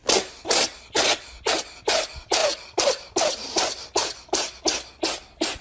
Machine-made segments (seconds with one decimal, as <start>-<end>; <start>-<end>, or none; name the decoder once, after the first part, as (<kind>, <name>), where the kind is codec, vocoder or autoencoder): 2.4-4.6 (vocoder, BigVGAN v2)